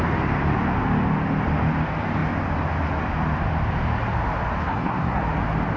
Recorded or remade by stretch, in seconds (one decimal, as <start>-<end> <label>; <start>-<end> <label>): 0.0-4.6 recorded; 4.6-5.2 remade; 5.2-5.8 recorded